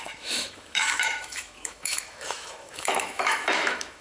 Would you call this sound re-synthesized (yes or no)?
yes